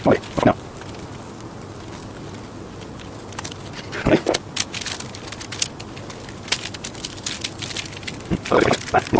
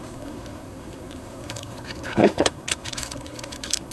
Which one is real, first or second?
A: first